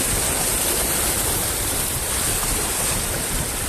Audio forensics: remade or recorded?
recorded